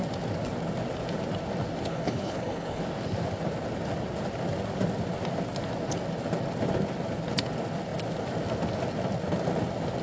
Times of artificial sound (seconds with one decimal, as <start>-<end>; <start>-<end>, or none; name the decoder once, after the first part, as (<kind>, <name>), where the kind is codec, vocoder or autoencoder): 1.9-2.8 (codec, HILCodec)